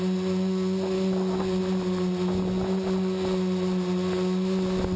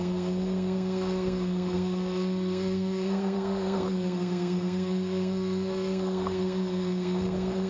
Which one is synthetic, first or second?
second